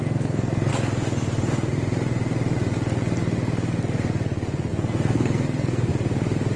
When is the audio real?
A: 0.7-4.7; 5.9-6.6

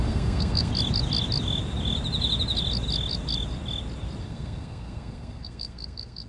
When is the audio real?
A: 0.7-4.2